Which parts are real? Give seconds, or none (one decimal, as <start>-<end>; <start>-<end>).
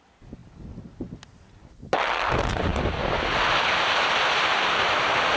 0.4-2.0